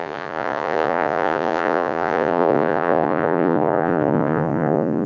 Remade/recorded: remade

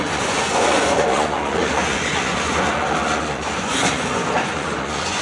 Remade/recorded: remade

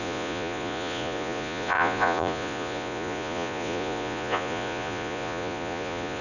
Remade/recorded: remade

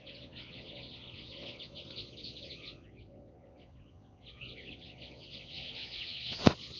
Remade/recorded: remade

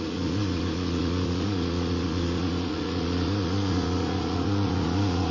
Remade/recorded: remade